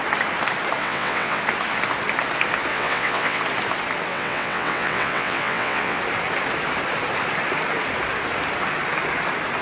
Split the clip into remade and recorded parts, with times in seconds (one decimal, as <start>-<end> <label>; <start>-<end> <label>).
0.0-0.8 recorded; 0.8-1.4 remade; 1.4-2.7 recorded; 2.7-3.4 remade; 3.4-4.1 recorded; 4.1-6.0 remade; 6.0-9.6 recorded